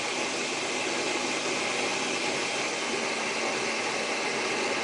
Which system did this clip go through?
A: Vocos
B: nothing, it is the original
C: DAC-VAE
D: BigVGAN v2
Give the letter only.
B